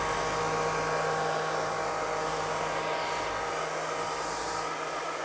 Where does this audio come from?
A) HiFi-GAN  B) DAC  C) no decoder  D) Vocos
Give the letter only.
C